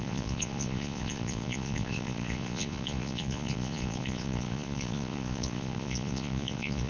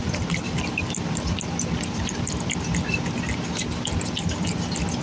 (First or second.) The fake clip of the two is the first